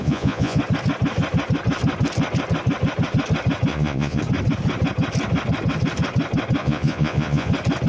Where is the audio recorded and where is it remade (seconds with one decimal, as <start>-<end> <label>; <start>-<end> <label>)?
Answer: 0.0-0.6 remade; 0.6-3.7 recorded; 3.7-4.2 remade; 4.2-6.6 recorded; 6.6-7.5 remade; 7.5-7.9 recorded